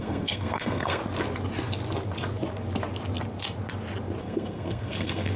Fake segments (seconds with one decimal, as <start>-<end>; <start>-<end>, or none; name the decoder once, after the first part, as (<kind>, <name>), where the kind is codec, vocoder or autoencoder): 0.0-1.0 (codec, SNAC); 4.2-5.4